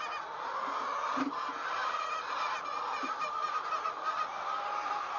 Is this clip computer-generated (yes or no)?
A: no